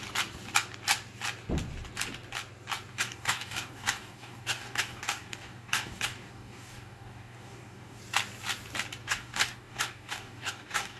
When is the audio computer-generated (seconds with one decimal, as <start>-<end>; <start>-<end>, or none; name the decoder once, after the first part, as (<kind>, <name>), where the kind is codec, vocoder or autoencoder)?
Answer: 2.9-8.0 (codec, DAC); 9.0-11.0